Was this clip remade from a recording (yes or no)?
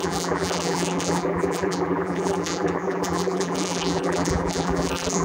yes